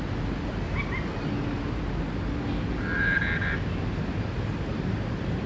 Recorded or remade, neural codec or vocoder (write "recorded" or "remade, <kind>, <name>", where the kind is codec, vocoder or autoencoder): recorded